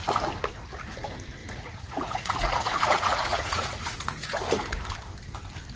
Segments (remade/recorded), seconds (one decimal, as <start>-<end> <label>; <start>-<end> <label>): 0.0-1.4 recorded; 1.4-4.4 remade; 4.4-5.8 recorded